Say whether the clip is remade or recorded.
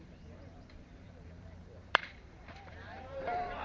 remade